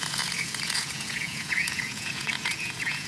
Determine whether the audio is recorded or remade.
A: remade